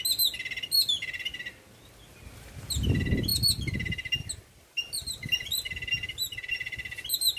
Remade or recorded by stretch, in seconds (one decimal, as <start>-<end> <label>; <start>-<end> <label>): 0.0-7.4 recorded